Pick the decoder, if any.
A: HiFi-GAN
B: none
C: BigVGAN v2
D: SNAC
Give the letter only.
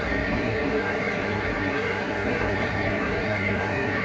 D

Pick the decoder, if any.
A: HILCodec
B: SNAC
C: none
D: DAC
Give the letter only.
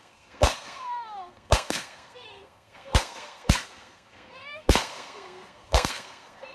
B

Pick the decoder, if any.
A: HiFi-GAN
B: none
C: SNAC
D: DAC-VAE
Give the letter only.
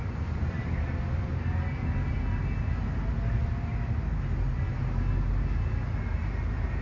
B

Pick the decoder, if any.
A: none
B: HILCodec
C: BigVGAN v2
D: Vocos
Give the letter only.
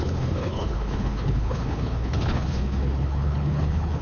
B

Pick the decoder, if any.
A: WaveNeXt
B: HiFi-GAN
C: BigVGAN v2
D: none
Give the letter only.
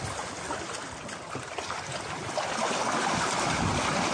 D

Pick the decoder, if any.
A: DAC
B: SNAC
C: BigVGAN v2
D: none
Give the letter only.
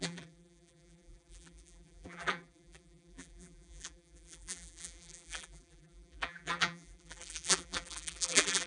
C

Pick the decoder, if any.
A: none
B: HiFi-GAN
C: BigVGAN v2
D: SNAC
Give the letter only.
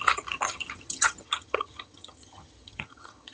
B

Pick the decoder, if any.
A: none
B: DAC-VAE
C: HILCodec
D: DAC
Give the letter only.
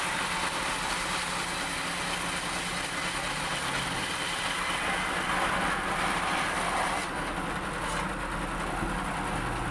A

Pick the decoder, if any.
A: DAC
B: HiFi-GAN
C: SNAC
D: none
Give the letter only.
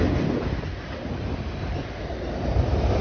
D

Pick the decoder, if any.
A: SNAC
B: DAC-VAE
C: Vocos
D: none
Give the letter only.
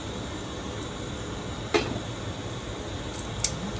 D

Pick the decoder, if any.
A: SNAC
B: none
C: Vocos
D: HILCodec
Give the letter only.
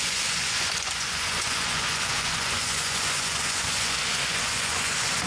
C